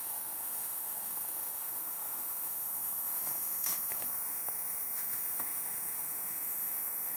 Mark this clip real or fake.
fake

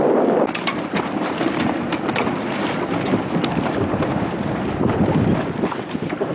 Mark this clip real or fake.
real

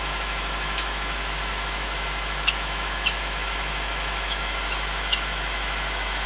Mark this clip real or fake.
fake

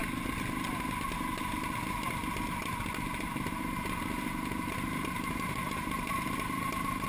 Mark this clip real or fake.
real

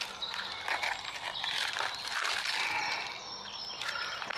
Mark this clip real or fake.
real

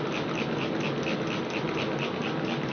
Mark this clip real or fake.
real